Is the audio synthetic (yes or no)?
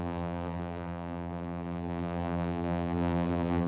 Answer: yes